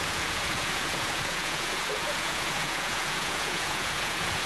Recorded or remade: remade